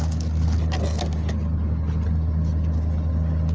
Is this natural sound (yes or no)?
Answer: yes